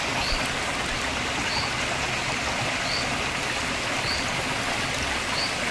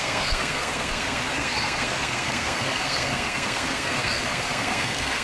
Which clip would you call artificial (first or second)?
second